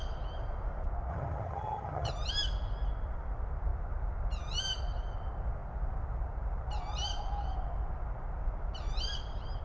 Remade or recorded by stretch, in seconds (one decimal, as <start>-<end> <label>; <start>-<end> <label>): 0.0-1.1 recorded; 1.1-2.1 remade; 2.1-9.6 recorded